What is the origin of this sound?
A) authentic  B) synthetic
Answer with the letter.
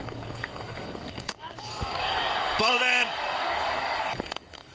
B